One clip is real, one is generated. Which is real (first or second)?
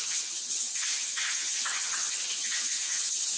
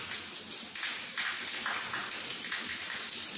second